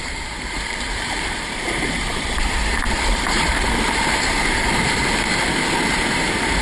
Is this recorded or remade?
remade